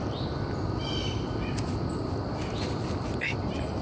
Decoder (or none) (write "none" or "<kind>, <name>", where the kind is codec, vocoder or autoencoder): none